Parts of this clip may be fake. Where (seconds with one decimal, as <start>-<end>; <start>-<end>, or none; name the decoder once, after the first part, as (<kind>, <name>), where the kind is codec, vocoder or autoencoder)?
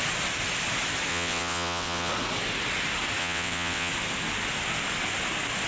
1.1-2.1 (vocoder, WaveNeXt); 3.2-3.9